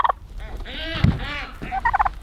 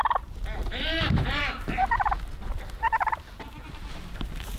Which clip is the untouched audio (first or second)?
first